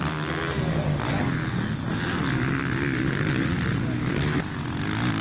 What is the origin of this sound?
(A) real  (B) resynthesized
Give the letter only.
A